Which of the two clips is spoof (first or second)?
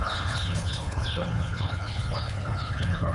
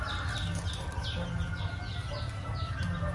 first